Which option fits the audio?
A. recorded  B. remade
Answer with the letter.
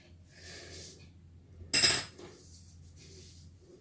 A